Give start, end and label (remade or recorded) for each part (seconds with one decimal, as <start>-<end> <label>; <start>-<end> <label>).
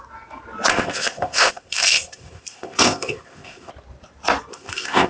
0.0-0.7 recorded; 0.7-3.7 remade; 3.7-4.5 recorded; 4.5-5.1 remade